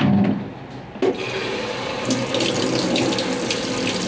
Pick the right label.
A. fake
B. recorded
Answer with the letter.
B